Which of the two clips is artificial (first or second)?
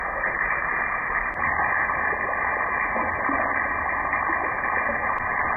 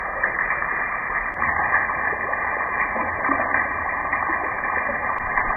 second